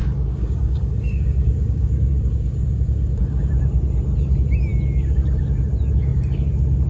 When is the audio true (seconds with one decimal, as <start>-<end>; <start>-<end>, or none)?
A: 3.5-6.9

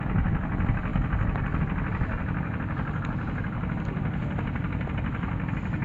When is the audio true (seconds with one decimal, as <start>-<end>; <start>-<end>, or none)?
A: 0.0-5.8

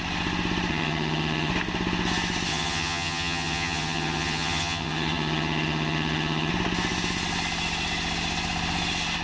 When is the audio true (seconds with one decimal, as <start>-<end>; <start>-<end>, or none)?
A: 0.0-0.7; 1.5-2.5; 6.5-9.2